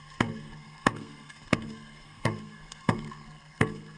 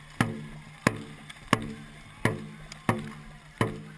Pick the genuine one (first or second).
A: second